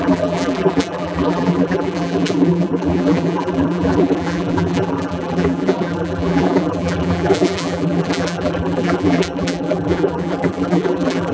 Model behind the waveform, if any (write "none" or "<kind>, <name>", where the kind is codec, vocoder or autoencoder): vocoder, BigVGAN v2